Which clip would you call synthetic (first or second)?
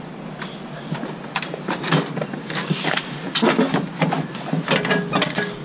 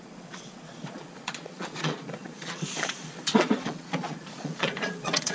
second